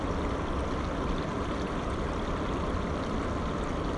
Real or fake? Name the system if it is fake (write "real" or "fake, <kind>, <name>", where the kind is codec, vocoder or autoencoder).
real